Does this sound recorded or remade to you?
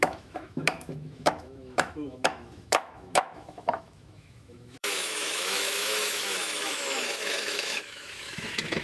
remade